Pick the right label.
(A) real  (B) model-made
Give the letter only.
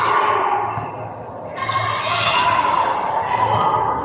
A